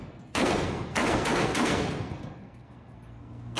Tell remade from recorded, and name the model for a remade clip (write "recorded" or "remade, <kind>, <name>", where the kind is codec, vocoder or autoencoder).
remade, codec, SNAC